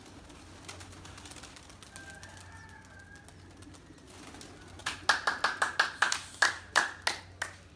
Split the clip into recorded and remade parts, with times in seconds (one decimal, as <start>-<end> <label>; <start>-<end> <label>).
0.0-7.8 recorded